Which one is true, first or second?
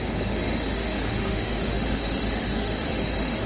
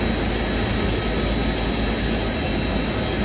second